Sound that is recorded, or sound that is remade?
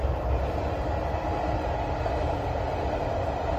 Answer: recorded